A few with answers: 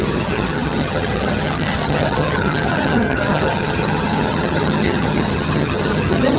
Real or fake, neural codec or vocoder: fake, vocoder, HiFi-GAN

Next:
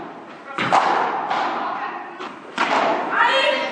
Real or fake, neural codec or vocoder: real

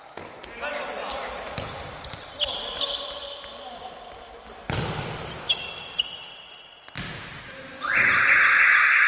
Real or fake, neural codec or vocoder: real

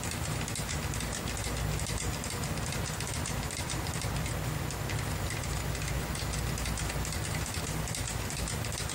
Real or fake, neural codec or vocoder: real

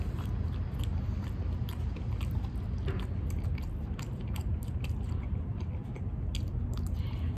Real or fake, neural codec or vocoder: real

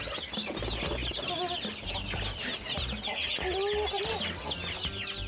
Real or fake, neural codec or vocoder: real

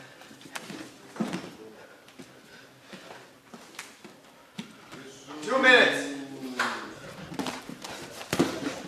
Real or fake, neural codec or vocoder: real